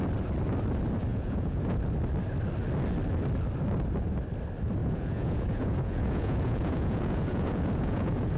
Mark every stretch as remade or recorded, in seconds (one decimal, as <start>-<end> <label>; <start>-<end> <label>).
0.0-1.1 recorded; 1.1-1.8 remade; 1.8-4.8 recorded; 4.8-8.4 remade